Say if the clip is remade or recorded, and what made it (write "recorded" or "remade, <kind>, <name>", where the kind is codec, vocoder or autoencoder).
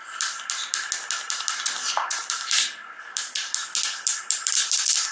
recorded